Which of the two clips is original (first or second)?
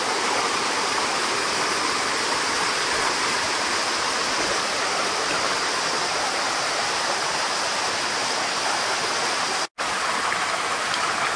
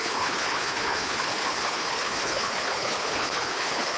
first